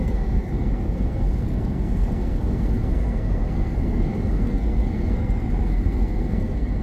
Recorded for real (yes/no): no